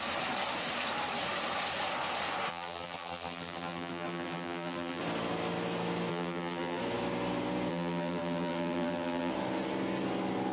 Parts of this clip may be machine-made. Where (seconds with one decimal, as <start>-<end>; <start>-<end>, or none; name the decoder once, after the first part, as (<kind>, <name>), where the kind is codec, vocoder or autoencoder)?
2.5-5.0 (vocoder, BigVGAN v2); 6.1-6.8; 7.7-9.3